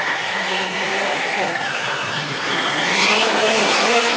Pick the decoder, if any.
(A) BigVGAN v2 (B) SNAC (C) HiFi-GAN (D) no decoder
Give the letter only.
B